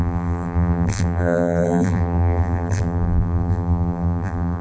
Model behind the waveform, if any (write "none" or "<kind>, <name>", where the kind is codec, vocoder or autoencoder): vocoder, BigVGAN v2